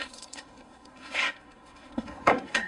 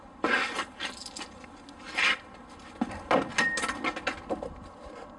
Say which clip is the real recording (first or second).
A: second